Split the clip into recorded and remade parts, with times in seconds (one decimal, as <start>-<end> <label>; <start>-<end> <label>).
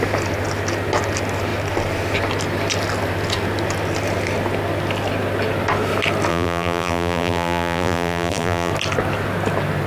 0.0-6.3 recorded; 6.3-8.7 remade; 8.7-9.9 recorded